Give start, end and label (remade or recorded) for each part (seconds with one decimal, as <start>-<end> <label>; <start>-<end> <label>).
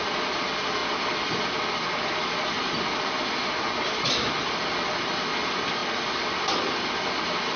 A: 0.0-7.6 recorded